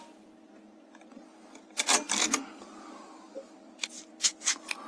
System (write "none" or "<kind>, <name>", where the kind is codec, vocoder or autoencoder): none